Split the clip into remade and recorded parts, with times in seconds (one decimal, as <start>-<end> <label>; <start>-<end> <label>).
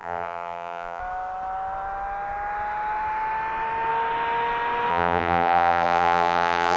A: 0.0-1.0 remade; 1.0-4.9 recorded; 4.9-6.8 remade